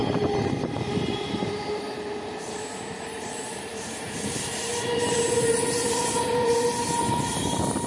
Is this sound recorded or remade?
remade